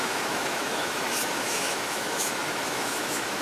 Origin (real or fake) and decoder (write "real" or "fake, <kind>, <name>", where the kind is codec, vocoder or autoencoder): fake, autoencoder, DAC-VAE